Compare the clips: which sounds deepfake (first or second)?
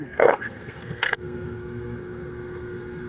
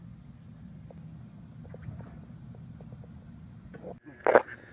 first